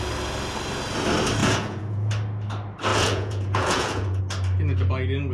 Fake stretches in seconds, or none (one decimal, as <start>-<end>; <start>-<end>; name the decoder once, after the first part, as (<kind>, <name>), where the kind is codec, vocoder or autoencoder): 1.4-2.1 (vocoder, Vocos); 2.9-4.2